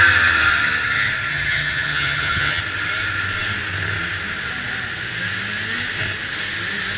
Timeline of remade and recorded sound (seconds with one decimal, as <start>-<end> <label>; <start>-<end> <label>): 0.0-1.3 recorded; 1.3-2.6 remade; 2.6-7.0 recorded